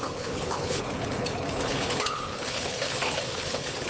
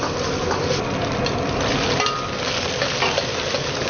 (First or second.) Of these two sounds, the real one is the second